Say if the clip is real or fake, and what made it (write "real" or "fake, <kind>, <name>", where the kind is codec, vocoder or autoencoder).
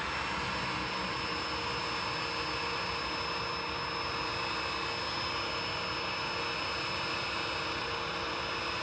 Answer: real